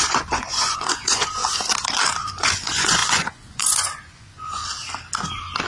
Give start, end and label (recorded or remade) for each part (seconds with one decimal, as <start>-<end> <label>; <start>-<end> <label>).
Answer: 0.0-1.4 remade; 1.4-2.3 recorded; 2.3-4.6 remade; 4.6-5.7 recorded